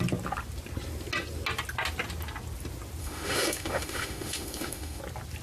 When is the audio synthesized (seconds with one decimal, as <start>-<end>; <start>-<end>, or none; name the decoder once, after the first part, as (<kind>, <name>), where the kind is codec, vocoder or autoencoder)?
3.0-5.0 (autoencoder, DAC-VAE)